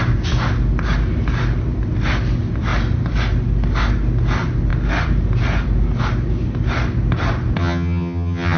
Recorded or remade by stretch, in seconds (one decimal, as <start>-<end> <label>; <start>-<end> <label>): 0.0-7.6 recorded; 7.6-8.6 remade